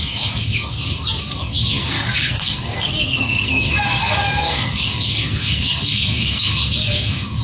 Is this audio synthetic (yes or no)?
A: yes